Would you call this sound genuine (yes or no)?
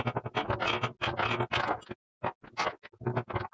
yes